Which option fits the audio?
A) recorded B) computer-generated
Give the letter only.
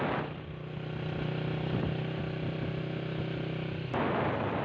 A